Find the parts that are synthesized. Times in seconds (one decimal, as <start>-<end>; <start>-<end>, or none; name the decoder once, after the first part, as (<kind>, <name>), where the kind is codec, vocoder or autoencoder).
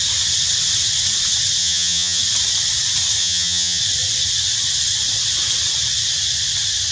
1.6-2.2 (vocoder, HiFi-GAN); 3.2-3.8